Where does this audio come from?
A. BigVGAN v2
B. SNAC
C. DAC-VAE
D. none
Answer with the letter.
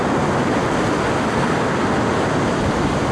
D